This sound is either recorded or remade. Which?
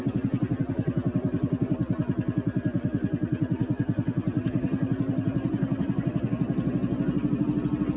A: recorded